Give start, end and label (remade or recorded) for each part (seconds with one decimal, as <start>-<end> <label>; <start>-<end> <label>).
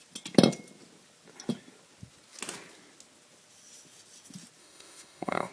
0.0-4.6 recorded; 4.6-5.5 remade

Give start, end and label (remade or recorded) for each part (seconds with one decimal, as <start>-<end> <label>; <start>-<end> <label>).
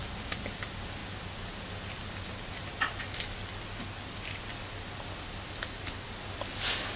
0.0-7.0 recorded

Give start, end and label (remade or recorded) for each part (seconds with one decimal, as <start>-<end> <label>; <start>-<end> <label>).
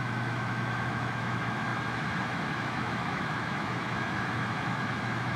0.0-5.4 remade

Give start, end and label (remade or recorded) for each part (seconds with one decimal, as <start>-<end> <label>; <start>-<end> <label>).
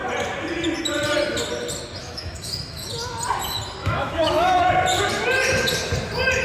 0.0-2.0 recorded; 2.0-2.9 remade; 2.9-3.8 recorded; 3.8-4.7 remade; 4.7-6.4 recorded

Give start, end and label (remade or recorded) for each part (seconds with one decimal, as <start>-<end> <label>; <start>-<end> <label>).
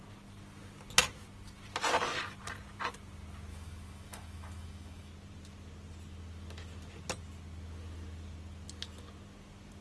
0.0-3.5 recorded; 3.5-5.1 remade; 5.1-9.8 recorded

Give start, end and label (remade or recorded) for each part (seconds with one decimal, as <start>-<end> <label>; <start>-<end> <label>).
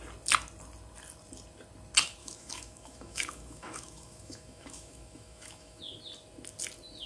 0.0-2.2 recorded; 2.2-5.8 remade; 5.8-7.1 recorded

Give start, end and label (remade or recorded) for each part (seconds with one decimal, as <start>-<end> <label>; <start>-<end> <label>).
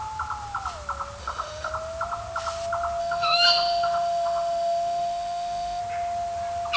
0.0-1.2 recorded; 1.2-1.7 remade; 1.7-3.0 recorded; 3.0-5.8 remade; 5.8-6.8 recorded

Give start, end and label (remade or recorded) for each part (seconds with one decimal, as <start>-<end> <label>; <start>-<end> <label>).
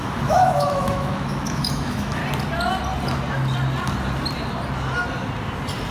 0.0-2.2 remade; 2.2-5.9 recorded